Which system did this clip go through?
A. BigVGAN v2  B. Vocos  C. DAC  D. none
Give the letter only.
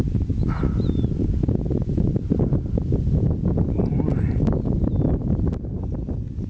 D